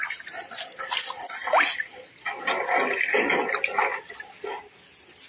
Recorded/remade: recorded